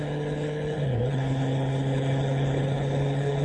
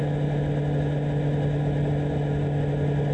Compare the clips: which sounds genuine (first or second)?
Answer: second